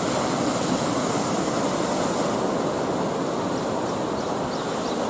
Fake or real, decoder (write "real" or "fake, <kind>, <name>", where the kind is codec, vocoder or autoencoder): real